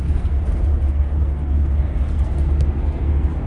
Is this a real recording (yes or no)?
no